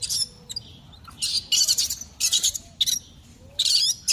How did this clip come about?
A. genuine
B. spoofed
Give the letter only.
A